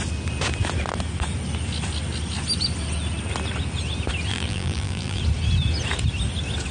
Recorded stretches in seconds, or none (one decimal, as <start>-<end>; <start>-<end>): 0.0-4.3; 5.2-6.7